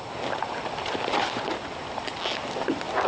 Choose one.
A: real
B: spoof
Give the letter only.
A